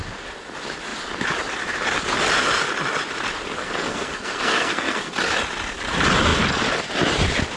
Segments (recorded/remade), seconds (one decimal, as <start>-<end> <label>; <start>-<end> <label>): 0.0-3.6 recorded; 3.6-5.1 remade; 5.1-7.6 recorded